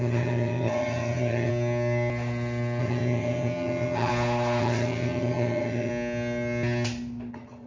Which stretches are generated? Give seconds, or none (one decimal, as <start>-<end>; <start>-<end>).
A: 0.0-1.5; 2.8-4.1; 4.6-5.9; 7.3-7.7